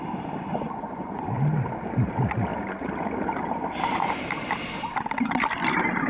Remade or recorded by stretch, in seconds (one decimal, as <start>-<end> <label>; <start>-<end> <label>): 0.0-0.5 recorded; 0.5-1.2 remade; 1.2-6.1 recorded